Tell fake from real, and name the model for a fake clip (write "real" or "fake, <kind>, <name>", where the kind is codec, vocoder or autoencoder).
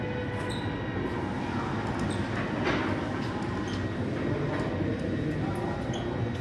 real